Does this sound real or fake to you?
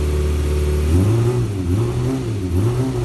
real